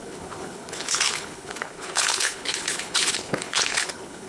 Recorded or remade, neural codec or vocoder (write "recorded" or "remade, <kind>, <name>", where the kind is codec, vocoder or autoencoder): remade, codec, HILCodec